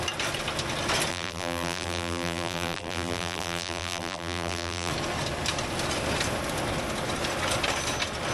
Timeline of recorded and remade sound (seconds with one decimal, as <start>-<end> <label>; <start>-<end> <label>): 0.0-1.1 recorded; 1.1-4.9 remade; 4.9-8.3 recorded